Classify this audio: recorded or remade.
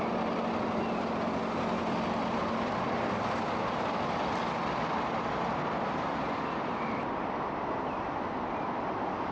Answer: recorded